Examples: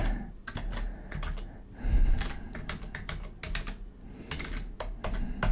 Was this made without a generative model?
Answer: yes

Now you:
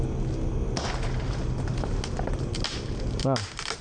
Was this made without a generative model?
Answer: yes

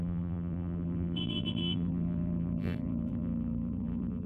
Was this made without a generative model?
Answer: no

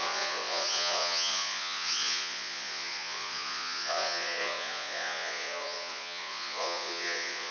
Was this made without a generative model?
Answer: no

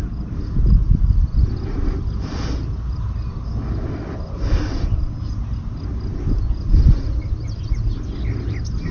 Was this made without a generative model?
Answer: yes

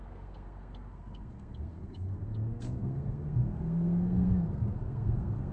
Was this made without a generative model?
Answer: no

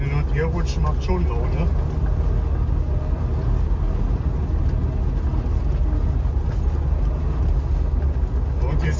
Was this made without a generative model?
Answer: yes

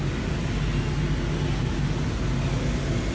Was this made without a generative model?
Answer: yes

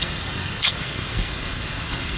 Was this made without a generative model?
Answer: no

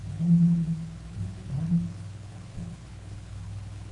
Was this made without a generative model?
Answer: no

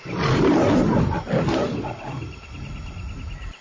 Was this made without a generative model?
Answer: yes